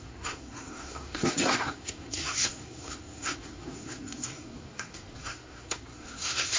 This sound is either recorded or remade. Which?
remade